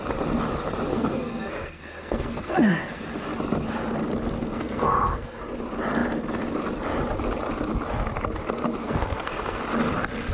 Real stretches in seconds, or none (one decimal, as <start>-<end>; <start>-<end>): 0.0-0.9; 3.0-4.4; 5.4-8.8; 9.6-10.3